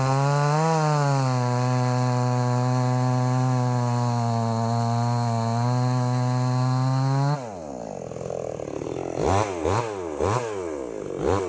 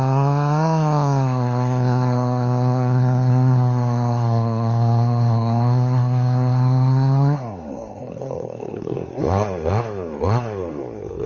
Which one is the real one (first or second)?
first